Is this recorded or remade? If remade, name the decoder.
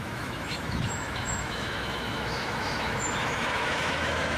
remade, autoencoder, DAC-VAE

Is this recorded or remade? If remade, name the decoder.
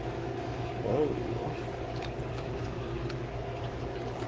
remade, codec, DAC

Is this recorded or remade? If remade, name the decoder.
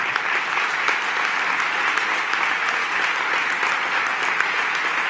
recorded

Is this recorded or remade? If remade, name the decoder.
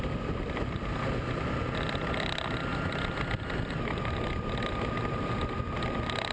recorded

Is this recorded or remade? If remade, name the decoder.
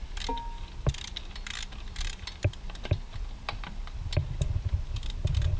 recorded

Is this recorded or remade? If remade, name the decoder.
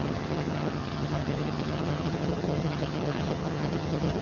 remade, vocoder, HiFi-GAN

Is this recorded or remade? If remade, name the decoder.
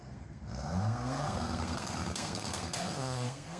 remade, codec, SNAC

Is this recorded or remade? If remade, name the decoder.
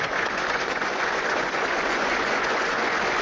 remade, vocoder, Vocos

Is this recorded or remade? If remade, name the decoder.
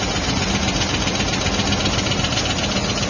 recorded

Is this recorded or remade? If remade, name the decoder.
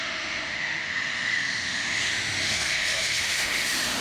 remade, autoencoder, DAC-VAE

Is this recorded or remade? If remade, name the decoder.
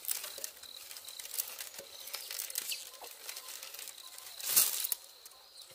recorded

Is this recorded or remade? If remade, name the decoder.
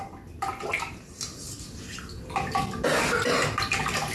recorded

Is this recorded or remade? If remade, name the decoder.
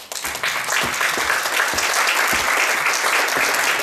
recorded